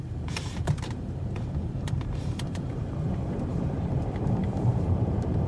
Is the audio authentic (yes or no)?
no